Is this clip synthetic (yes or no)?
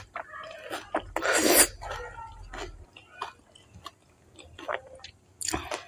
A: no